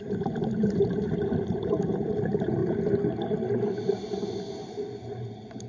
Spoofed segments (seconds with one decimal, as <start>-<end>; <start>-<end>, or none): 0.0-2.6